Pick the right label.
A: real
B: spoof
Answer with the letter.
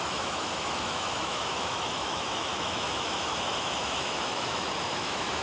B